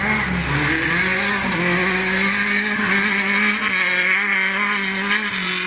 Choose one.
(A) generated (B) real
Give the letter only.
B